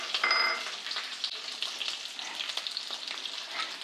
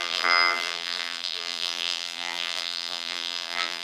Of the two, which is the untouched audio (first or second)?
first